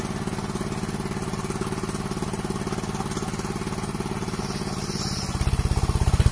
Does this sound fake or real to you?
real